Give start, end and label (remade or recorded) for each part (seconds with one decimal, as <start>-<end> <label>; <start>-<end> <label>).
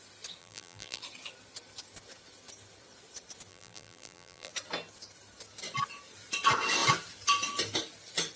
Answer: 0.0-0.4 recorded; 0.4-1.0 remade; 1.0-3.5 recorded; 3.5-4.5 remade; 4.5-8.4 recorded